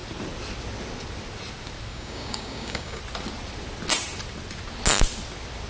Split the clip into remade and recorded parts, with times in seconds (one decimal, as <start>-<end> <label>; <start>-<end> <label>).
0.0-1.9 recorded; 1.9-3.0 remade; 3.0-5.7 recorded